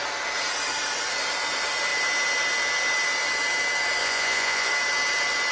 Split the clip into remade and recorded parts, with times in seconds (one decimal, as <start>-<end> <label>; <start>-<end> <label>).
0.0-4.0 recorded; 4.0-4.7 remade; 4.7-5.5 recorded